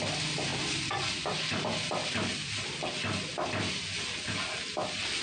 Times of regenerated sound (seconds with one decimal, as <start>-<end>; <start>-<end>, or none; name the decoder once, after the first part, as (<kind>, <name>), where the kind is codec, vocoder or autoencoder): none